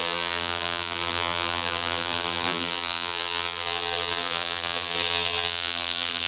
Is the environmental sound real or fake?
fake